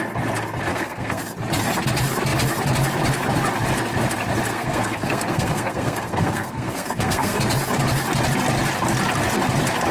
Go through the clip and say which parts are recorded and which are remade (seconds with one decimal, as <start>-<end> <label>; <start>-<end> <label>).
0.0-0.7 recorded; 0.7-1.2 remade; 1.2-4.5 recorded; 4.5-7.4 remade; 7.4-9.9 recorded